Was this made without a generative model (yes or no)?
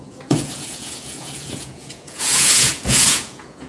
no